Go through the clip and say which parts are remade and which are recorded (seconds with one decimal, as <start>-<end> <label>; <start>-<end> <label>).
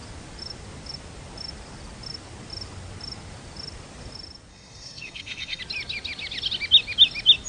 0.0-4.5 recorded; 4.5-5.6 remade; 5.6-7.5 recorded